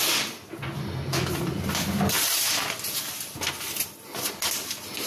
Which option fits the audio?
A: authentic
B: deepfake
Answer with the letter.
A